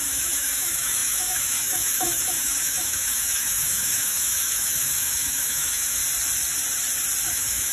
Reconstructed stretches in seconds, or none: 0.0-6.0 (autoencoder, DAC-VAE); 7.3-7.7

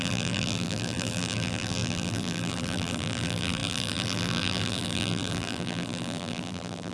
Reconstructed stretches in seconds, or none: 0.0-6.9 (vocoder, BigVGAN v2)

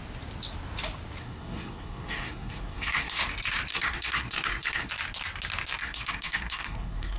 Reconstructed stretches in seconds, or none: 1.2-3.2 (codec, SNAC); 3.7-4.9; 5.8-7.2

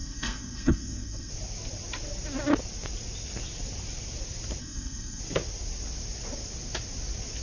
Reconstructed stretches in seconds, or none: 0.0-1.3 (codec, SNAC); 4.6-5.2